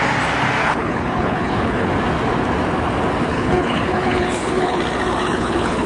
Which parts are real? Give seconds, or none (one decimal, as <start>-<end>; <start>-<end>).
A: 0.0-0.6; 1.9-3.3; 4.8-5.2